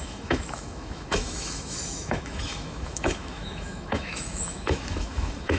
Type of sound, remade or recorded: remade